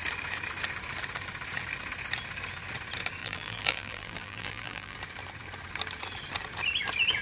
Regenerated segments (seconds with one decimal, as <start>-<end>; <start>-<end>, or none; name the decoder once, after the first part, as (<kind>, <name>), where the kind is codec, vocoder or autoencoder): 3.2-5.0 (vocoder, BigVGAN v2)